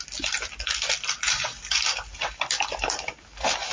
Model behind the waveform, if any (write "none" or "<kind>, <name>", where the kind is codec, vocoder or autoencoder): none